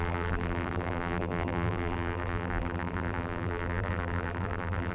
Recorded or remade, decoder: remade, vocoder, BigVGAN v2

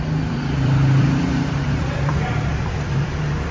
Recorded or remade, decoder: remade, vocoder, BigVGAN v2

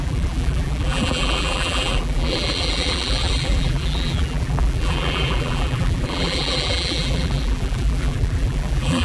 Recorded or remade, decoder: remade, vocoder, BigVGAN v2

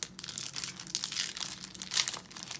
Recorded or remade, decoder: recorded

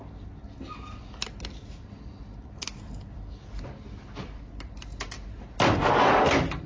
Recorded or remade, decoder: recorded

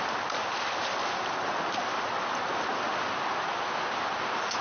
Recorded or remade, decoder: recorded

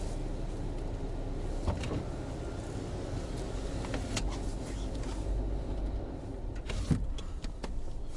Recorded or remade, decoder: recorded